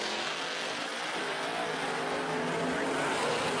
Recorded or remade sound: recorded